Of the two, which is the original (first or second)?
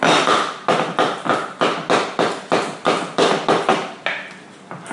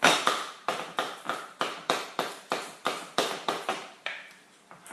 first